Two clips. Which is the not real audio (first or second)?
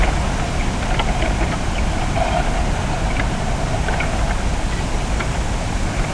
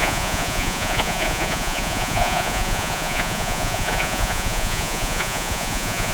second